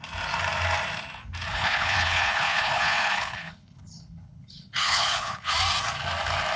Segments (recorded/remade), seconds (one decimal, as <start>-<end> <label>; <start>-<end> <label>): 0.0-1.5 recorded; 1.5-5.5 remade; 5.5-6.6 recorded